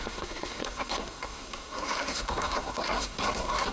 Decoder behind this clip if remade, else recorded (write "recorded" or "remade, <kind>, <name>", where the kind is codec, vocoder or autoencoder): remade, codec, SNAC